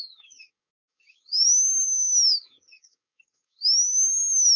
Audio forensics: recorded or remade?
remade